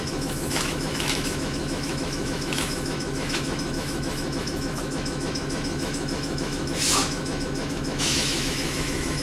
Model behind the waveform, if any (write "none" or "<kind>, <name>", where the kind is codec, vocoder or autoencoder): autoencoder, DAC-VAE